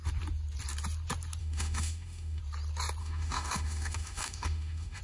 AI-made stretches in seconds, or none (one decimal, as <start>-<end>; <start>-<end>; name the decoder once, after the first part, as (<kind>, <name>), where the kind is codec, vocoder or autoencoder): 1.4-2.4 (autoencoder, DAC-VAE); 3.0-5.0